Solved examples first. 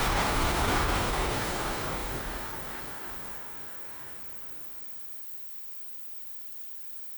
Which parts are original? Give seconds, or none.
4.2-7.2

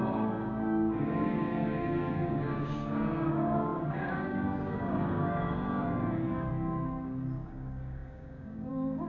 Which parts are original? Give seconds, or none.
none

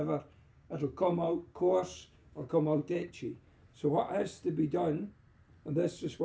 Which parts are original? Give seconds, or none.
0.0-0.5; 3.1-6.2